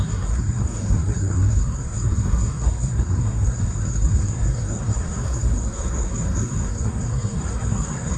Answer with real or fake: fake